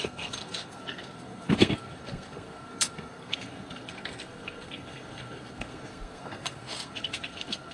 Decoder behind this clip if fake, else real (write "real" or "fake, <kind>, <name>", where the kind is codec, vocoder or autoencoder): fake, codec, SNAC